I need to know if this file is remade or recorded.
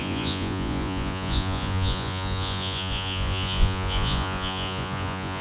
remade